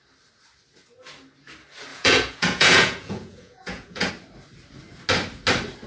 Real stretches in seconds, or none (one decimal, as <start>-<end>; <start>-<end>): 0.0-1.9; 4.1-5.9